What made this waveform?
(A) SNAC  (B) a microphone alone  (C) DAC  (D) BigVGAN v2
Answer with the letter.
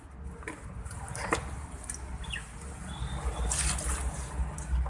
B